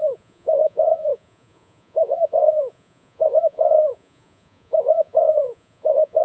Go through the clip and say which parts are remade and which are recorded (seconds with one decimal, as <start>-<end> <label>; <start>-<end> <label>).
0.0-6.2 remade